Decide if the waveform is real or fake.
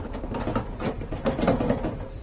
real